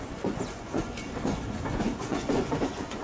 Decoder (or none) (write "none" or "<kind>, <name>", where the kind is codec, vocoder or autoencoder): vocoder, Vocos